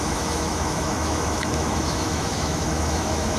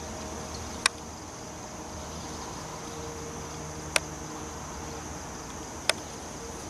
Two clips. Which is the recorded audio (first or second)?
second